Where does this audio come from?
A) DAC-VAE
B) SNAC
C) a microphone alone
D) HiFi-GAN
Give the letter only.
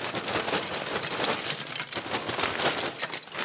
C